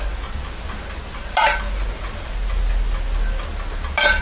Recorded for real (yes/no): yes